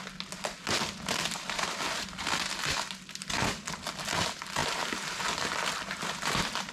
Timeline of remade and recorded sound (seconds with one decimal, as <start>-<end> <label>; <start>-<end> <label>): 0.0-4.6 recorded; 4.6-5.2 remade; 5.2-6.7 recorded